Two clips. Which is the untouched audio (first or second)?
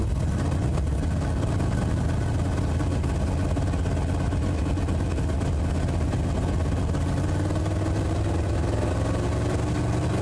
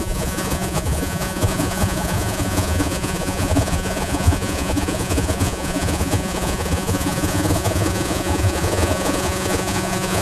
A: first